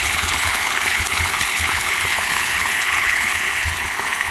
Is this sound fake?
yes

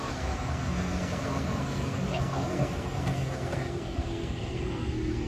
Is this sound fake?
yes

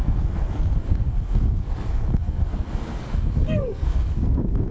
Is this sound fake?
yes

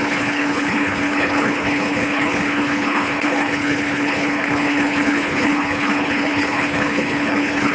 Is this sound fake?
yes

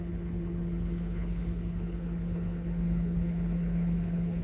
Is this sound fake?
yes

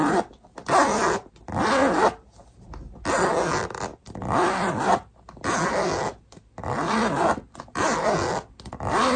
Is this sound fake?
no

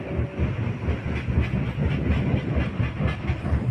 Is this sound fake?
no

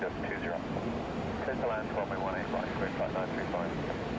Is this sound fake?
no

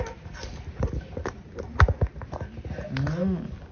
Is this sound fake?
no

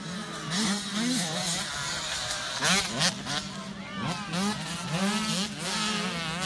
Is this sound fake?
no